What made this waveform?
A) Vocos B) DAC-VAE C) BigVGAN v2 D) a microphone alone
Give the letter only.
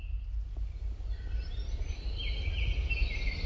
C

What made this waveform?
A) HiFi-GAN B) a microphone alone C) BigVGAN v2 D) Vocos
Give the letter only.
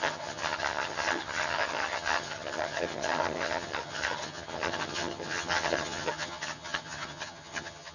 A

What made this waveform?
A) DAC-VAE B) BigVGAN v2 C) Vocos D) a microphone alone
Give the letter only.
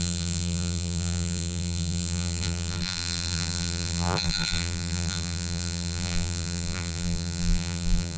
B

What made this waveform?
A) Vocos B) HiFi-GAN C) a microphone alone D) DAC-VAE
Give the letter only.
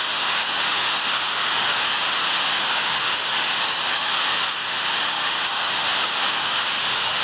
D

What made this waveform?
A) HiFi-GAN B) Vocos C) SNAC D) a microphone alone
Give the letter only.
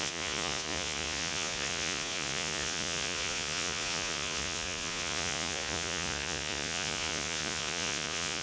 B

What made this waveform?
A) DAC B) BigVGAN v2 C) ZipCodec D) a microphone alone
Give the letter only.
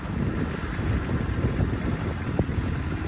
D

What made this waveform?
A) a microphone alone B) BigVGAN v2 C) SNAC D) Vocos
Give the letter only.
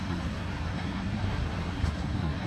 C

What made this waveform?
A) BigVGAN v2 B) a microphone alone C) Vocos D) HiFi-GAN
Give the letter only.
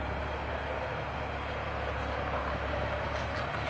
B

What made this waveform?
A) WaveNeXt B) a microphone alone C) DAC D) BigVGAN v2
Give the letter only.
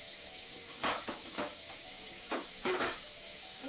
C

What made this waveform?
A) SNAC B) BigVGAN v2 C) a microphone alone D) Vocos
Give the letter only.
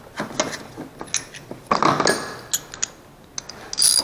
C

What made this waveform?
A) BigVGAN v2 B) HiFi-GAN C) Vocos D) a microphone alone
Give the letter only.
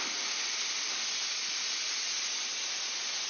D